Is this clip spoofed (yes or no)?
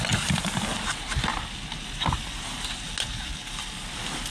no